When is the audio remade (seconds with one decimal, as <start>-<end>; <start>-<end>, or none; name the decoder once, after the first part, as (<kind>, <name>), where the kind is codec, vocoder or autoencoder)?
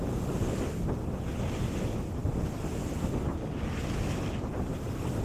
none